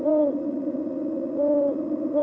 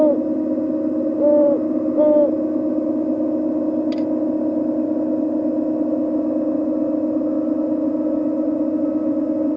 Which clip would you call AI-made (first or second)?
first